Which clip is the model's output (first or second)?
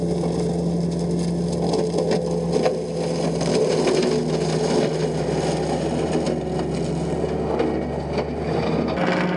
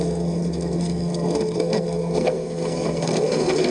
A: second